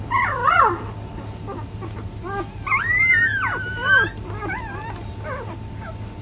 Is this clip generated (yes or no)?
no